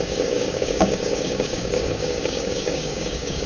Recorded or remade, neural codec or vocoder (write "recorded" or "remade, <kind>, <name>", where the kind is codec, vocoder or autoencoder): remade, codec, DAC